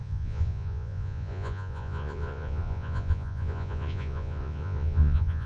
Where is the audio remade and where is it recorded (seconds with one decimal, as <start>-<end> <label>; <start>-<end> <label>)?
0.0-5.5 remade